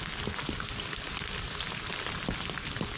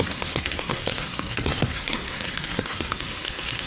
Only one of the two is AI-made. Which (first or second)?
second